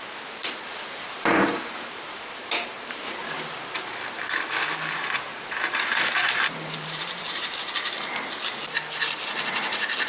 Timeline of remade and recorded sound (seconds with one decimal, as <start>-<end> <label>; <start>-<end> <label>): 0.0-0.4 recorded; 0.4-4.5 remade; 4.5-5.3 recorded; 5.3-7.6 remade; 7.6-10.1 recorded